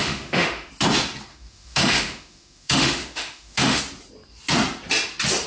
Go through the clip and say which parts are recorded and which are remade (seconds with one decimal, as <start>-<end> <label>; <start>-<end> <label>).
0.0-0.7 remade; 0.7-1.3 recorded; 1.3-3.8 remade; 3.8-5.5 recorded

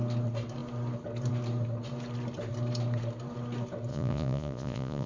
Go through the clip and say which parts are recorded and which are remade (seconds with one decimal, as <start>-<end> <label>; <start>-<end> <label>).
0.0-3.9 recorded; 3.9-5.1 remade

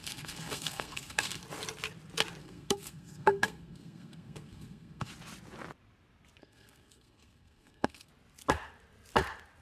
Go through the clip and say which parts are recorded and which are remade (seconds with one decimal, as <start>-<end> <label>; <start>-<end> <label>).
0.0-1.4 remade; 1.4-2.4 recorded; 2.4-5.1 remade; 5.1-6.4 recorded; 6.4-8.1 remade; 8.1-9.6 recorded

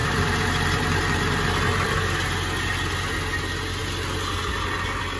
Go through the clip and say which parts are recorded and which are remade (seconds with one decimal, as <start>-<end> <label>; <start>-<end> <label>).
0.0-0.5 remade; 0.5-5.2 recorded

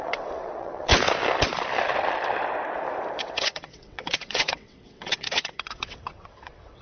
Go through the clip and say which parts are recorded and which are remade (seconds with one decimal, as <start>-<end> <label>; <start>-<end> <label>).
0.0-0.9 remade; 0.9-3.2 recorded; 3.2-6.8 remade